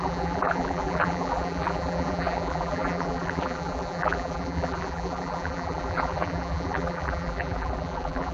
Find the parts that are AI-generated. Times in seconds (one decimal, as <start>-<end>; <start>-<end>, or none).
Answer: 0.0-8.3